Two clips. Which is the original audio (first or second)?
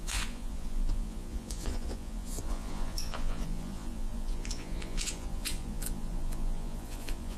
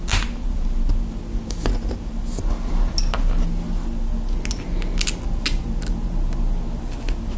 second